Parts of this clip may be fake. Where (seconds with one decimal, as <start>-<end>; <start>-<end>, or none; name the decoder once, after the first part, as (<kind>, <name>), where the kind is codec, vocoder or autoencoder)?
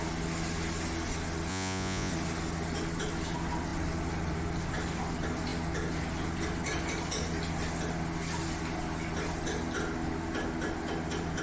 1.5-2.1 (vocoder, Vocos)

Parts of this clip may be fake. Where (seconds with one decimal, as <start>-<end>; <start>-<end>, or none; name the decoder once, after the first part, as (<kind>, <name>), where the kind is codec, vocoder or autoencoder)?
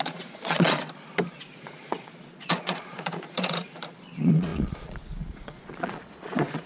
0.0-0.8 (vocoder, Vocos); 1.5-6.7